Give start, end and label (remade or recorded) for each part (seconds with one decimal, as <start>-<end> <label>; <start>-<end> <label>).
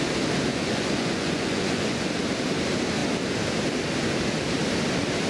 0.0-0.5 recorded; 0.5-2.1 remade; 2.1-5.3 recorded